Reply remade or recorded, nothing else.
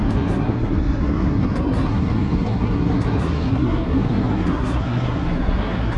remade